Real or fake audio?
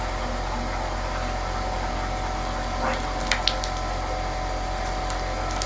real